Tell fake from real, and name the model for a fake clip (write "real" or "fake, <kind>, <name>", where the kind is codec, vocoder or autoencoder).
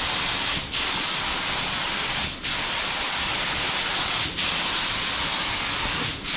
real